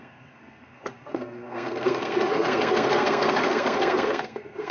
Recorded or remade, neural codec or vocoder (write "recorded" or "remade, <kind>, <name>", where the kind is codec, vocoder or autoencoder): remade, codec, SNAC